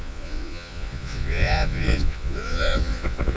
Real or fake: fake